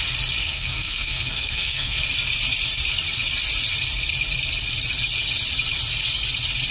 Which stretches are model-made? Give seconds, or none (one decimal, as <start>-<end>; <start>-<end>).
0.4-2.0

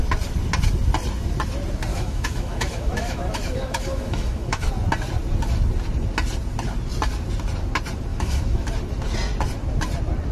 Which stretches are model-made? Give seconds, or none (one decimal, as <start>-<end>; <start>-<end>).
1.9-4.7; 8.1-8.7

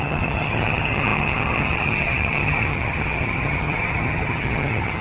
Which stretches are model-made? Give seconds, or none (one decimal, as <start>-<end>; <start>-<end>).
0.0-5.0

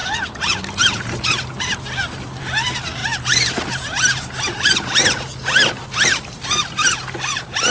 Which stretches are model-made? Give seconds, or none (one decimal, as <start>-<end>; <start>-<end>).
0.8-3.0

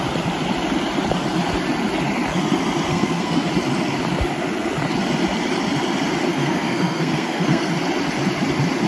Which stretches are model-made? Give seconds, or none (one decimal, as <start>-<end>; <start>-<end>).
2.9-3.5; 6.3-7.7

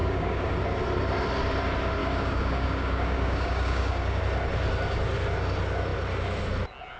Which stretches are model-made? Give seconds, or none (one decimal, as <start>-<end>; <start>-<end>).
0.0-0.6; 2.0-4.2